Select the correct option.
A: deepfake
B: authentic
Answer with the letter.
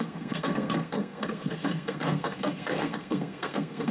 A